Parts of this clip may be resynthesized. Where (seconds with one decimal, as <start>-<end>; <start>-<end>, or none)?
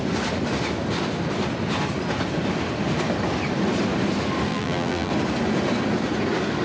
4.5-5.1